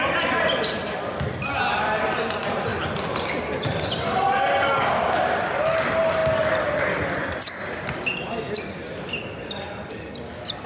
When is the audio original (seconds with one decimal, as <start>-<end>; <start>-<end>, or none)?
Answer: 0.0-10.7